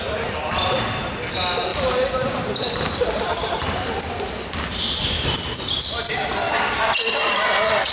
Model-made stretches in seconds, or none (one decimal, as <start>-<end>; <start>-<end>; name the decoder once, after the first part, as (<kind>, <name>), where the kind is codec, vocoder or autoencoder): none